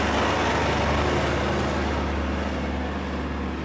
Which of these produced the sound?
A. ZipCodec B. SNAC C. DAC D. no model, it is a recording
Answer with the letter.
D